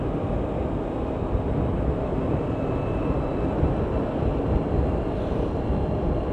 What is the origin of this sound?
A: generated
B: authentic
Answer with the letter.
B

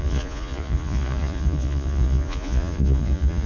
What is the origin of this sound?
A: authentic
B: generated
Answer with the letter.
B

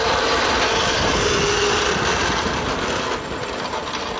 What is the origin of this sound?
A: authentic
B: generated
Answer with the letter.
A